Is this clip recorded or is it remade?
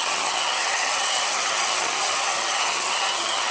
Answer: remade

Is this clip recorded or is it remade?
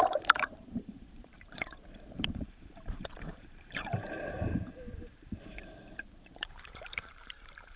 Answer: remade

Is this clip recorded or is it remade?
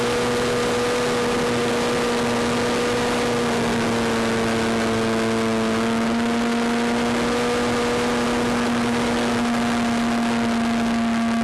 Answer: recorded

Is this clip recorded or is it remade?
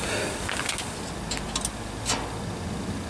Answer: recorded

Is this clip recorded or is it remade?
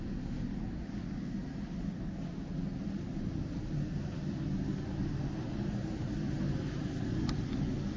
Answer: recorded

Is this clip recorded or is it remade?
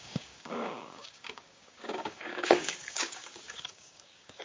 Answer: remade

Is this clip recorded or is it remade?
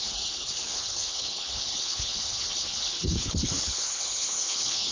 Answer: remade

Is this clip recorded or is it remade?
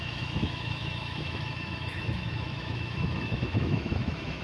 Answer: remade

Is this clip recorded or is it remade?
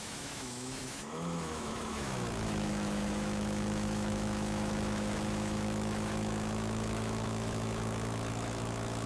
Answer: remade